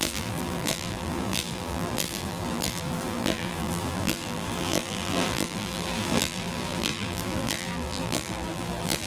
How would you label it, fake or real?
fake